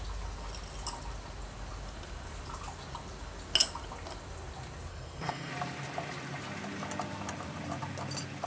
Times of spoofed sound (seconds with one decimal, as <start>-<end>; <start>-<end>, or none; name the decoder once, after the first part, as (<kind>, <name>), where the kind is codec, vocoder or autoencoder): 4.9-5.5 (codec, SNAC)